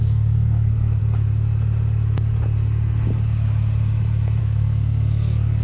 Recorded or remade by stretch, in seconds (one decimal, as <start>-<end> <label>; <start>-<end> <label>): 0.0-1.0 remade; 1.0-4.4 recorded; 4.4-5.6 remade